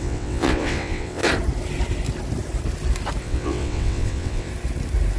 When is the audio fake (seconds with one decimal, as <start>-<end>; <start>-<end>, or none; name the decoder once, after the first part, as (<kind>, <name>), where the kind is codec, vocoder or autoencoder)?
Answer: 0.0-1.2 (vocoder, WaveNeXt); 3.2-4.5

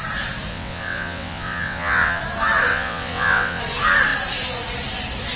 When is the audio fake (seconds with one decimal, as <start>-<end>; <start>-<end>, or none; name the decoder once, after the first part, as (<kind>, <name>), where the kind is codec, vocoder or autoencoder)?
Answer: 0.5-2.2 (vocoder, WaveNeXt); 2.7-3.6

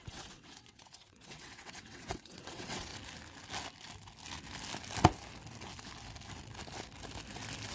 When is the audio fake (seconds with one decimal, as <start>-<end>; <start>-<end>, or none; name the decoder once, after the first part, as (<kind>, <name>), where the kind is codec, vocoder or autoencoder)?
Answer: 0.0-2.9 (vocoder, WaveNeXt)

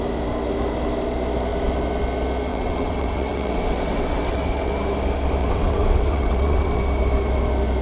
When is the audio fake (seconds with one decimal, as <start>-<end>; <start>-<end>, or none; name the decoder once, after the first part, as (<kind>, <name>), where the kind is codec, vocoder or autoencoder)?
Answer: 2.5-4.7 (vocoder, WaveNeXt); 5.4-6.8

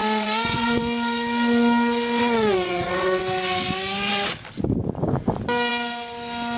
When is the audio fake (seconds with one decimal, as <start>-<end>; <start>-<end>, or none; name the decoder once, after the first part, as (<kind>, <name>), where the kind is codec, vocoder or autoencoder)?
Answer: 0.0-0.8 (vocoder, WaveNeXt); 2.2-3.2

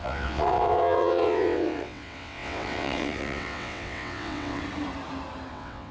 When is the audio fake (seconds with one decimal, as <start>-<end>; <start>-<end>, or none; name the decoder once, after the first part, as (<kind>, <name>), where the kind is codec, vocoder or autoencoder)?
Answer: 0.0-4.6 (vocoder, WaveNeXt); 5.5-5.9

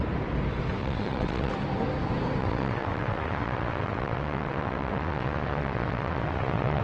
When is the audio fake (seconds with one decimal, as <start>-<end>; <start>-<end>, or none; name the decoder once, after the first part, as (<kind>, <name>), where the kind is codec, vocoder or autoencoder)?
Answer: 0.8-1.5 (vocoder, WaveNeXt); 2.4-6.8

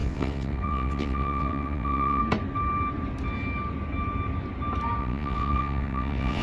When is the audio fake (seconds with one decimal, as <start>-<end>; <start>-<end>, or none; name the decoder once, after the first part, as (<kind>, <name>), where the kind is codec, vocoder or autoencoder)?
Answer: 0.0-2.2 (vocoder, WaveNeXt); 5.0-6.4